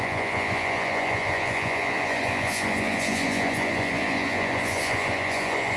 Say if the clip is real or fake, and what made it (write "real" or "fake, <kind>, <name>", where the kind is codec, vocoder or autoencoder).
fake, vocoder, Vocos